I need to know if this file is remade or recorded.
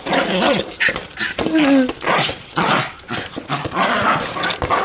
recorded